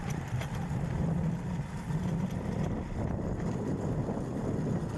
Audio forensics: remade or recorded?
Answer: recorded